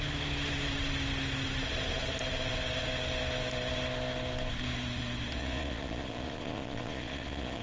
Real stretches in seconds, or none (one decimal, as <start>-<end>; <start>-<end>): 0.0-5.4